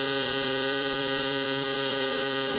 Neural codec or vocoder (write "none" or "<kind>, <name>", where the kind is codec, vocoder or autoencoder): vocoder, Vocos